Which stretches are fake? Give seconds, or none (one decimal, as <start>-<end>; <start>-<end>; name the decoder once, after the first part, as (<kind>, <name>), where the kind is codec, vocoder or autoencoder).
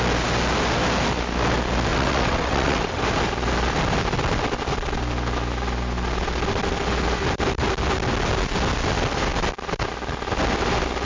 1.9-3.0 (vocoder, WaveNeXt)